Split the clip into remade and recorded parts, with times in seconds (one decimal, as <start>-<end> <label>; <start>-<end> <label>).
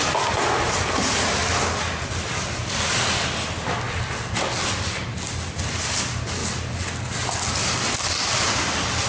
0.0-9.1 recorded